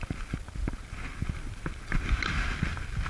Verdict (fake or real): real